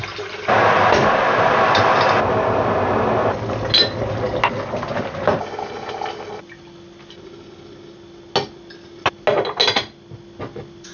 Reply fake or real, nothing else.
real